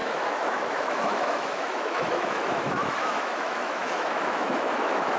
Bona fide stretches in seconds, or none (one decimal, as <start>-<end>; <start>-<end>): none